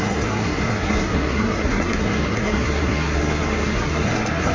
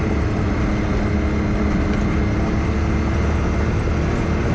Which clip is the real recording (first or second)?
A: second